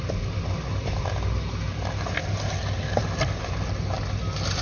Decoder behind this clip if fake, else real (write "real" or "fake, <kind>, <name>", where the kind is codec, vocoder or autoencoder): real